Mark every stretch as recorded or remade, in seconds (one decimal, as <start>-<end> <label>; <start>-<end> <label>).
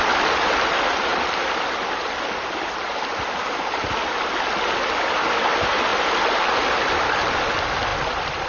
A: 0.0-1.1 recorded; 1.1-2.2 remade; 2.2-5.9 recorded; 5.9-7.4 remade; 7.4-7.9 recorded; 7.9-8.5 remade